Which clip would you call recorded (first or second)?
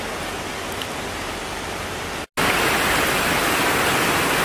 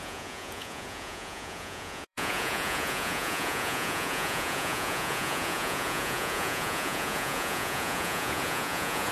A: first